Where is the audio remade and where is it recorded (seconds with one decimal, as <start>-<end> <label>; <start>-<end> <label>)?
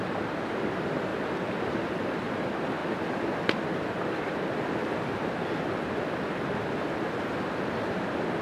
0.0-1.1 recorded; 1.1-1.9 remade; 1.9-8.4 recorded